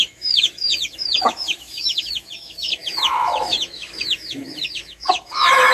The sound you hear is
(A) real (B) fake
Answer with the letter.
B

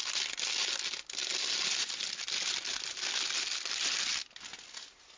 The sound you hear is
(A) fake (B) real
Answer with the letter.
B